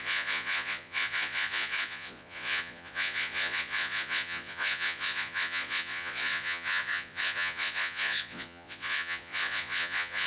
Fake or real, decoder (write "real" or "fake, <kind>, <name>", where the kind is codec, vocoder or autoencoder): fake, vocoder, Vocos